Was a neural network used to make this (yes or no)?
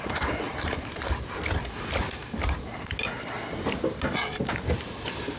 no